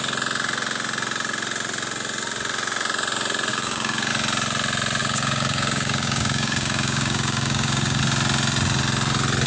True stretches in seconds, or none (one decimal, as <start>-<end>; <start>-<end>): 0.0-3.5; 4.1-5.0; 8.0-9.5